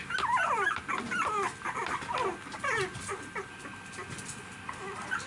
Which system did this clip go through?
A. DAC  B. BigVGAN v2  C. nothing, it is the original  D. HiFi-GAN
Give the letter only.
C